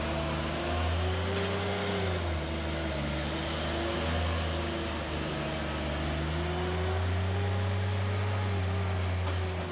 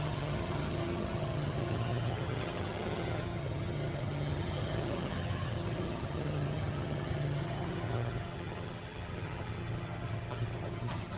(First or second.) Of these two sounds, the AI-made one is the second